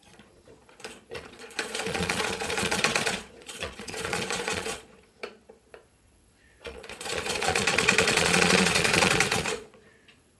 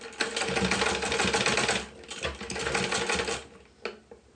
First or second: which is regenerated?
first